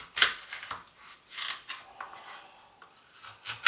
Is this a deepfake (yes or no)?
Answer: no